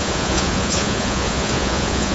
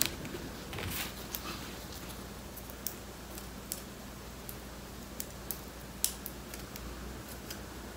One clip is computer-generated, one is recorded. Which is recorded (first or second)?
second